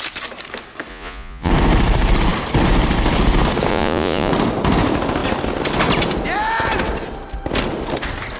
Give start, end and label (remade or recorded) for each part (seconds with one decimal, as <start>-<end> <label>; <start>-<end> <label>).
0.0-0.9 recorded; 0.9-1.5 remade; 1.5-3.7 recorded; 3.7-4.3 remade; 4.3-8.4 recorded